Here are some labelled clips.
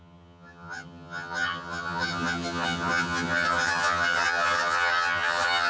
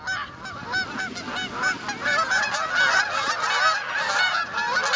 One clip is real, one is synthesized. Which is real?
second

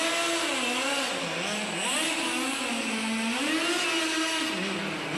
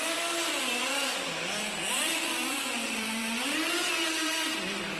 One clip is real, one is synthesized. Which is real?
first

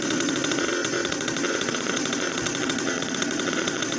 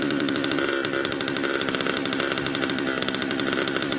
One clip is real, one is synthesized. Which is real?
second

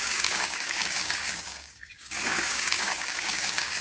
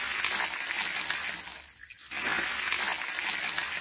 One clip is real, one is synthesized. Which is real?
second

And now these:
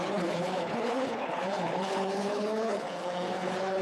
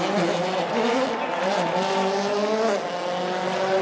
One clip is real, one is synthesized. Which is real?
second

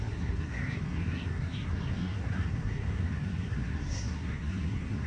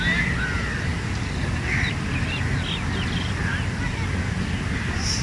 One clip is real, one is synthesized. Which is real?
second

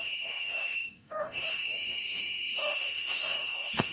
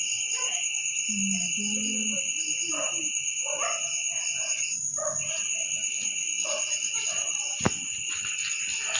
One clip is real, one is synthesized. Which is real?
second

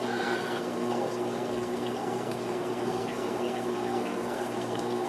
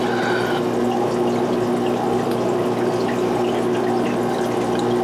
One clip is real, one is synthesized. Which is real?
second